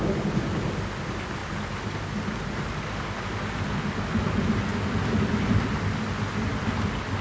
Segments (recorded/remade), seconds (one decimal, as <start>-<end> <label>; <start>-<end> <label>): 0.0-7.2 recorded